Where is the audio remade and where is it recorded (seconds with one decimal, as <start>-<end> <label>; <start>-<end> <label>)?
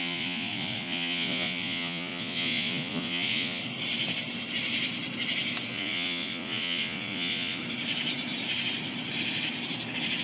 0.0-3.6 remade; 3.6-5.7 recorded; 5.7-7.6 remade; 7.6-10.2 recorded